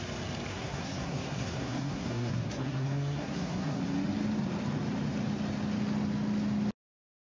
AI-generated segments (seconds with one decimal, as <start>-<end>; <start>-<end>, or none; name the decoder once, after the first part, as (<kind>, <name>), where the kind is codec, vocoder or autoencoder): 0.5-3.8 (codec, SNAC)